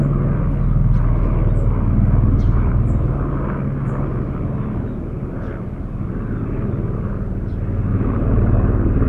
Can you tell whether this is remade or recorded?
recorded